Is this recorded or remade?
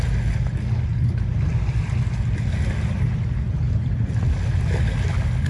recorded